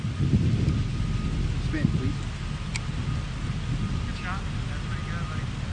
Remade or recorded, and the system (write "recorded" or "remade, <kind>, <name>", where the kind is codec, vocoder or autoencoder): recorded